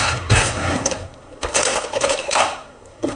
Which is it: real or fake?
fake